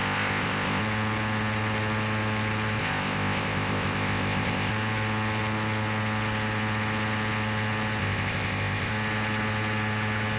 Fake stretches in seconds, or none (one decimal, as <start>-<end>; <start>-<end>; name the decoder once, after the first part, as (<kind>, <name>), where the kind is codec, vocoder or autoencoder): 0.0-0.8 (codec, ZipCodec); 2.8-4.7; 8.0-8.9